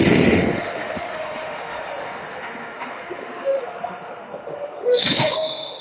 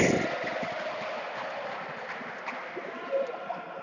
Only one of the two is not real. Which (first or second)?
first